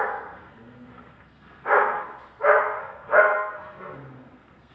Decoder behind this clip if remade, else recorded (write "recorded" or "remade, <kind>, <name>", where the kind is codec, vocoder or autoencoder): remade, codec, SNAC